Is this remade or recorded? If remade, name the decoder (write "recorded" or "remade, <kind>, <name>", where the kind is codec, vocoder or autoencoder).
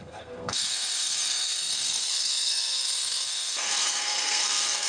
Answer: remade, codec, SNAC